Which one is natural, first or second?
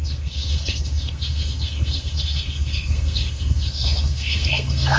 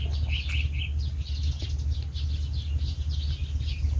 second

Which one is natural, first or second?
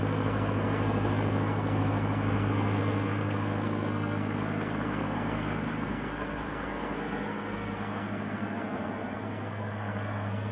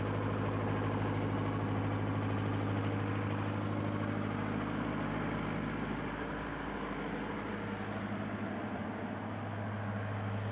second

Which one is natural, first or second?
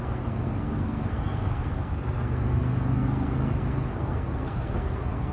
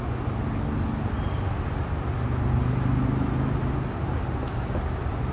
second